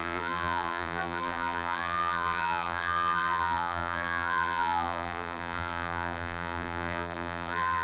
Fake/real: fake